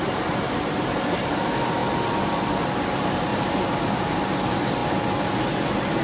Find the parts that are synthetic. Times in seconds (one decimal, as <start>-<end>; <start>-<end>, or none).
3.3-3.8